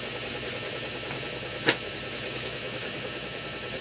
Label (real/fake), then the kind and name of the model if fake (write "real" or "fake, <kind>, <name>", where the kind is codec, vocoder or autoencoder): real